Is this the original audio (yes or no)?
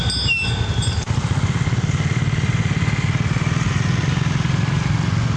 yes